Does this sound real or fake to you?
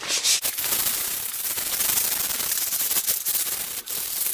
fake